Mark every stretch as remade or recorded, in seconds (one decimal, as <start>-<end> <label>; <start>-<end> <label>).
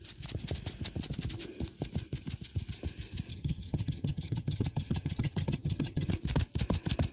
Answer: 0.0-3.3 recorded; 3.3-6.1 remade; 6.1-7.1 recorded